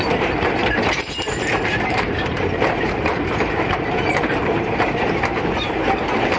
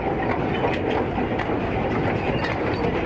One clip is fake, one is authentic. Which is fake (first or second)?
first